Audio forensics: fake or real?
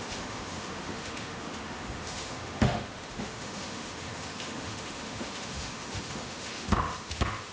fake